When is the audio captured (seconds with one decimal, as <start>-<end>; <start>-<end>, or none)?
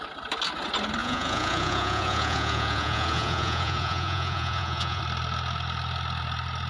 0.0-1.0; 5.0-6.7